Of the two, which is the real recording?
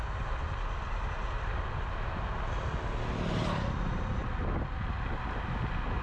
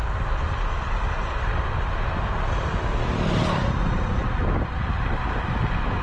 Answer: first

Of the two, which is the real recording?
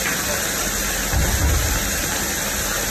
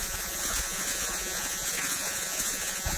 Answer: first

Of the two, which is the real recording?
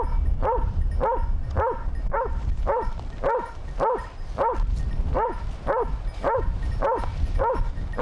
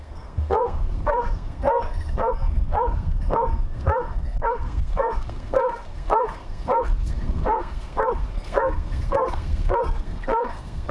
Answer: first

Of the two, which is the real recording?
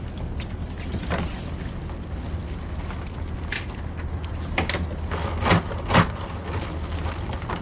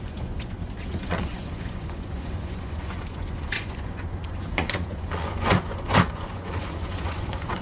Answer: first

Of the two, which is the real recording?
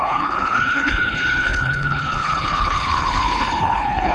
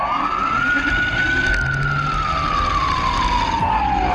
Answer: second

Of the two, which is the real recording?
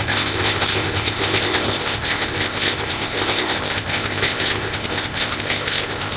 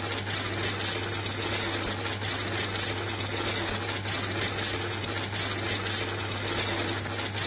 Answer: second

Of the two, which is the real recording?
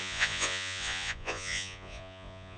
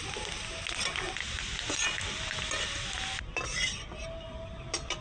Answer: second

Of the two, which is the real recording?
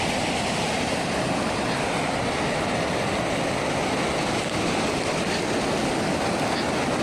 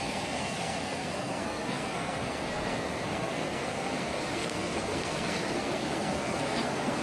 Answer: first